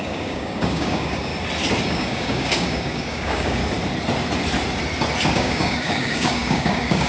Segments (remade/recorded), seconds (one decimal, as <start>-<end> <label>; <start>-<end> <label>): 0.0-1.3 remade; 1.3-1.9 recorded; 1.9-3.6 remade; 3.6-5.3 recorded; 5.3-7.1 remade